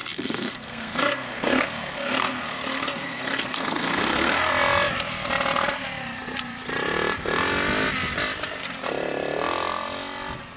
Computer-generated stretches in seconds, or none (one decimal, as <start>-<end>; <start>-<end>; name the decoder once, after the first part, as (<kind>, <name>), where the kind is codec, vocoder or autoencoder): 0.0-4.5 (codec, SNAC)